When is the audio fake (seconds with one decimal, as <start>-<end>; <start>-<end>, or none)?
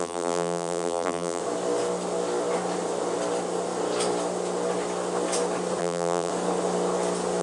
0.0-1.4; 5.8-6.3